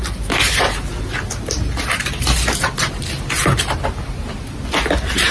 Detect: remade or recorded recorded